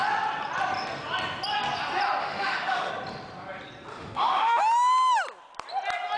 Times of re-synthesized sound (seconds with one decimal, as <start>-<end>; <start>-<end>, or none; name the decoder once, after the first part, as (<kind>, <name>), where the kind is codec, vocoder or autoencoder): 2.2-2.9 (autoencoder, DAC-VAE); 3.9-4.6